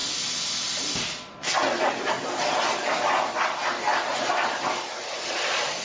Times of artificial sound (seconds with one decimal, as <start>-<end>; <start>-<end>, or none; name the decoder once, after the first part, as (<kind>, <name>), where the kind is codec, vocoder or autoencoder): none